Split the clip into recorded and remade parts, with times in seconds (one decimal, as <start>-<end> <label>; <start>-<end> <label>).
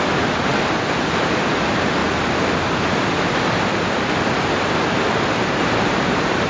0.0-0.5 remade; 0.5-1.2 recorded; 1.2-2.0 remade; 2.0-5.6 recorded; 5.6-6.5 remade